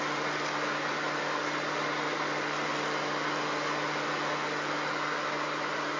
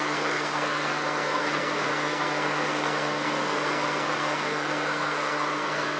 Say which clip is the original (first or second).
first